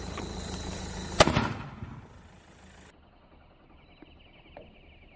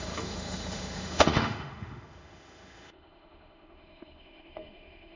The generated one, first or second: second